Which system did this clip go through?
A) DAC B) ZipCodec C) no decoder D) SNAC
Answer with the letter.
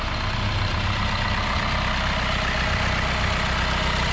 C